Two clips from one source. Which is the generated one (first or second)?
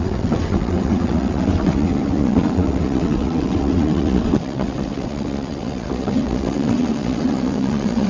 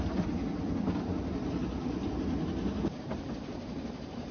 first